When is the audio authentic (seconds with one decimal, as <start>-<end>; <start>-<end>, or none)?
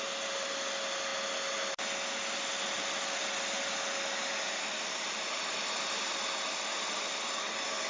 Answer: 0.0-7.9